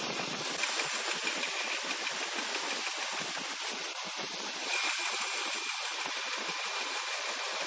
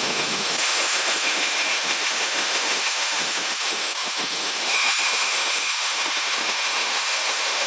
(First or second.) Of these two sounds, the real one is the first